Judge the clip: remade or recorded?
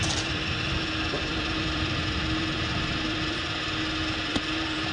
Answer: remade